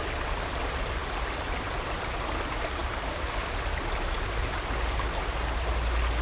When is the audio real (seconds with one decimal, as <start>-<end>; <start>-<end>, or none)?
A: 0.0-6.2

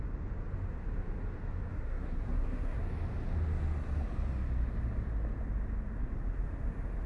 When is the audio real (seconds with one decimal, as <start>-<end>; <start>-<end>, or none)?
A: 0.0-1.7; 2.8-7.1

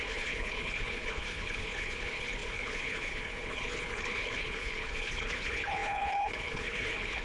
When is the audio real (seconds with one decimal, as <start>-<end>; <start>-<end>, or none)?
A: none

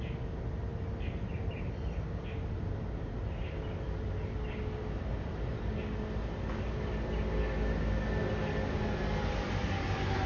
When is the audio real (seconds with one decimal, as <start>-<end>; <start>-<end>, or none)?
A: 0.0-10.3

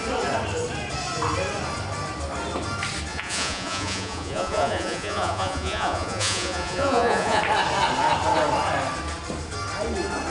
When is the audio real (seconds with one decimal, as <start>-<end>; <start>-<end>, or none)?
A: 0.0-3.1; 7.4-10.3